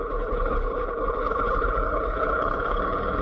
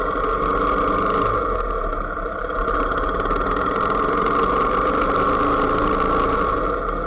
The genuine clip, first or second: second